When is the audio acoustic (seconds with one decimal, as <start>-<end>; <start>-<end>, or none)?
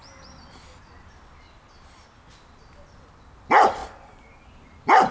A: 0.0-5.1